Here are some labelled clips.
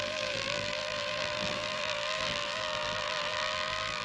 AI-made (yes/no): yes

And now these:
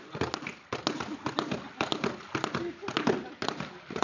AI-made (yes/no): no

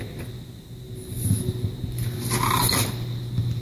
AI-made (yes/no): no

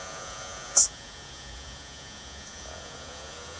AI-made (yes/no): yes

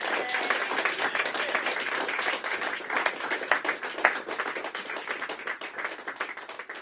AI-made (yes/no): no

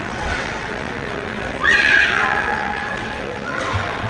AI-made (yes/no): yes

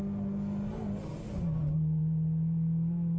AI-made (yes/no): no